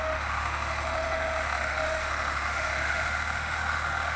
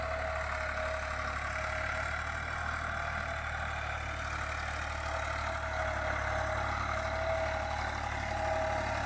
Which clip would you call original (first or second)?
second